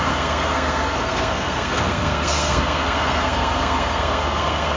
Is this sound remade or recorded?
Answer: remade